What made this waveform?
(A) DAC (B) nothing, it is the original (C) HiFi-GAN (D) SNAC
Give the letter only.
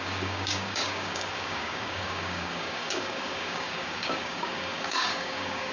A